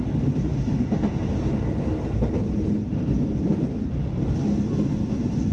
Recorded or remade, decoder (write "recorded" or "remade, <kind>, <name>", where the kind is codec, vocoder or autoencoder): recorded